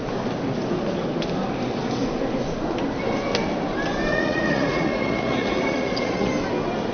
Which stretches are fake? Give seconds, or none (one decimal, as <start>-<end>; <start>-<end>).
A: 4.1-6.3